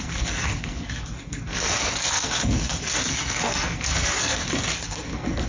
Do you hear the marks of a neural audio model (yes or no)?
yes